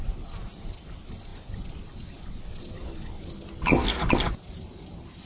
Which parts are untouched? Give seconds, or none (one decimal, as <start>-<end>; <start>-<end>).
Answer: 0.0-5.3